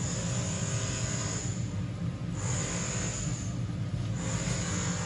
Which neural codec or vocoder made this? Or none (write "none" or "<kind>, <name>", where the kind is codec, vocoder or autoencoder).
none